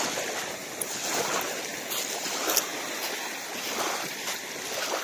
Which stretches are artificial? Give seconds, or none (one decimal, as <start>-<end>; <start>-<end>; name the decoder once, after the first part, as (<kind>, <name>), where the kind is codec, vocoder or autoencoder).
2.7-4.6 (vocoder, BigVGAN v2)